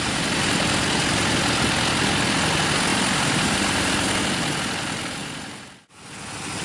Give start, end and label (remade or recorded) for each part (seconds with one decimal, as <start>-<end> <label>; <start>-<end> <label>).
0.0-2.9 recorded; 2.9-3.9 remade; 3.9-6.6 recorded

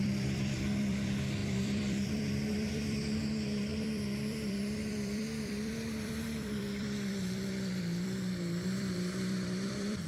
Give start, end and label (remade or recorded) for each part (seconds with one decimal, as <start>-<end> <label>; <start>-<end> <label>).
0.0-10.1 remade

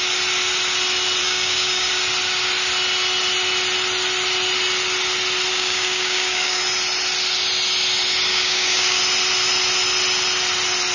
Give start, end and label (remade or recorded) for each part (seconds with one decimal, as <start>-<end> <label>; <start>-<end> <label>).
0.0-1.2 recorded; 1.2-1.9 remade; 1.9-5.5 recorded; 5.5-6.6 remade; 6.6-8.3 recorded; 8.3-9.0 remade; 9.0-10.9 recorded

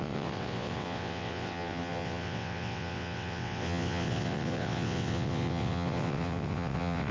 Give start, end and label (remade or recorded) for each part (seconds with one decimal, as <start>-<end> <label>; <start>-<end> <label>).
0.0-7.1 remade

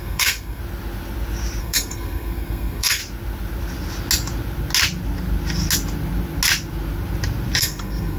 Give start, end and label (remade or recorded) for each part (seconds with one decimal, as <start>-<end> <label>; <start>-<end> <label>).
0.0-0.6 remade; 0.6-1.6 recorded; 1.6-3.0 remade; 3.0-7.6 recorded; 7.6-8.2 remade

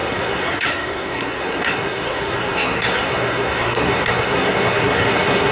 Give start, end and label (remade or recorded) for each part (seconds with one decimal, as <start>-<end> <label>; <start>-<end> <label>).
0.0-5.5 remade

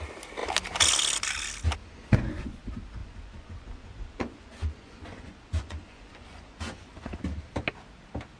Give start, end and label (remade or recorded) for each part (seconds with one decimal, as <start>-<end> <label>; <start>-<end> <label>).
0.0-1.8 recorded; 1.8-2.6 remade; 2.6-3.0 recorded; 3.0-7.2 remade; 7.2-8.4 recorded

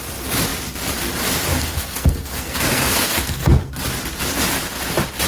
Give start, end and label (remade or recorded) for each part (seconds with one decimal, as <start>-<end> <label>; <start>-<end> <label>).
0.0-1.5 recorded; 1.5-3.8 remade; 3.8-5.3 recorded